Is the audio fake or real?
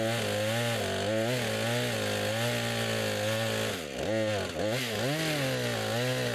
real